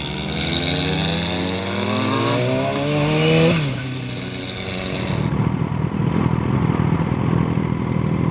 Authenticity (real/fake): real